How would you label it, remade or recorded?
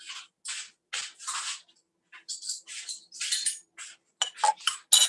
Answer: recorded